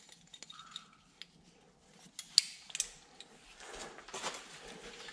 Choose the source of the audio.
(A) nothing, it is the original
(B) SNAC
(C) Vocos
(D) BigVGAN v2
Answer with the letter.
A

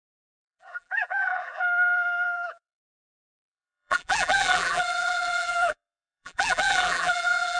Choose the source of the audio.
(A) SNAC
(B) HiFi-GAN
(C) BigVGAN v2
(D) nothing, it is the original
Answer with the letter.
C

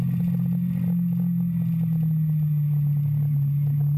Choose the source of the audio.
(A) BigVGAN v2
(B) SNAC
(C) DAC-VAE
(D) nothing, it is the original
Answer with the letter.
D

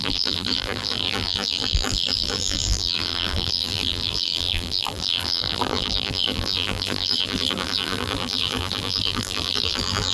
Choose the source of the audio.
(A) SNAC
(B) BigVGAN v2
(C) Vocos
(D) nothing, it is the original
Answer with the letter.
B